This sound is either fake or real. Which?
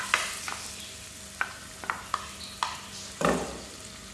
real